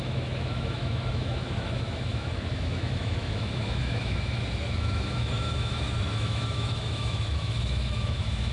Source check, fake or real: fake